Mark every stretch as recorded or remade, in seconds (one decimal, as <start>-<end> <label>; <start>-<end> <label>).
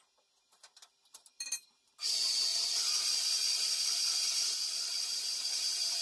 0.0-0.5 recorded; 0.5-1.9 remade; 1.9-2.5 recorded; 2.5-5.2 remade; 5.2-6.0 recorded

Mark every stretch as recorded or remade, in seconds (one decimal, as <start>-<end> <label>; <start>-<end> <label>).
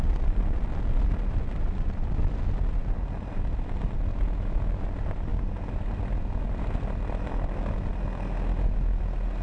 0.0-9.4 recorded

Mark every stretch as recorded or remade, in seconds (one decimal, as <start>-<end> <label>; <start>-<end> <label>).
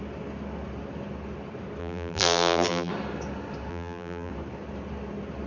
0.0-1.8 recorded; 1.8-2.9 remade; 2.9-3.7 recorded; 3.7-4.3 remade; 4.3-5.5 recorded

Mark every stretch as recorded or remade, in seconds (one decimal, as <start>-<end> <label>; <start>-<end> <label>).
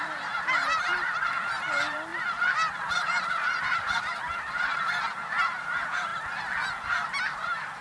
0.0-6.1 remade; 6.1-6.9 recorded; 6.9-7.8 remade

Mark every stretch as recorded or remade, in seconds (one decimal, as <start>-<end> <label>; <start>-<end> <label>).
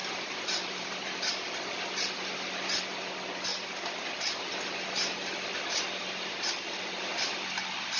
0.0-2.2 remade; 2.2-8.0 recorded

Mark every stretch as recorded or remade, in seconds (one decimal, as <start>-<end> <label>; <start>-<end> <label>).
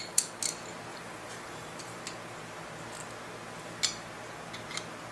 0.0-0.9 recorded; 0.9-2.0 remade; 2.0-5.1 recorded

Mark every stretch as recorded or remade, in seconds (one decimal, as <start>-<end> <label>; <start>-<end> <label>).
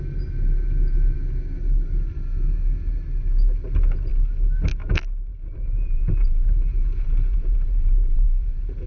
0.0-5.3 recorded; 5.3-8.9 remade